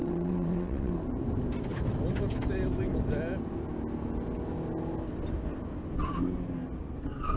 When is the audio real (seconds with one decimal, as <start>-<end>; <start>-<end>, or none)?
0.9-7.4